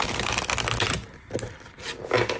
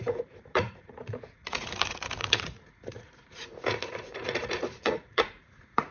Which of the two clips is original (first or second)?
first